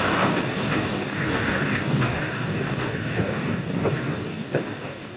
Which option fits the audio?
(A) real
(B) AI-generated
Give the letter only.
B